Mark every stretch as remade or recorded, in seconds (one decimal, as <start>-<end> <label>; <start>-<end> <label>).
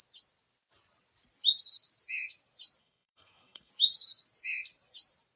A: 0.0-2.8 recorded; 2.8-3.7 remade; 3.7-5.4 recorded